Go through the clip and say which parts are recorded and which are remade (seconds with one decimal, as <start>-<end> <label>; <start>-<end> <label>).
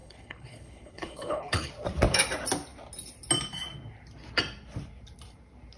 0.0-1.7 remade; 1.7-5.8 recorded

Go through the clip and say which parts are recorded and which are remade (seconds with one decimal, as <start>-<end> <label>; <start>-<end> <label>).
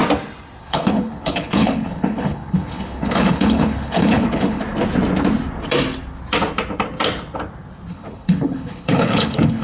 0.0-0.6 recorded; 0.6-4.6 remade; 4.6-7.9 recorded; 7.9-9.6 remade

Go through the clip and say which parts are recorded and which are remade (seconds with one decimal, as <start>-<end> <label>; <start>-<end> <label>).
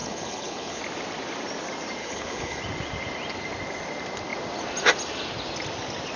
0.0-0.8 remade; 0.8-2.0 recorded; 2.0-2.6 remade; 2.6-6.2 recorded